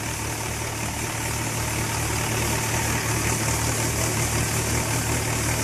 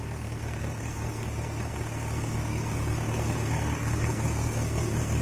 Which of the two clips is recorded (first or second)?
first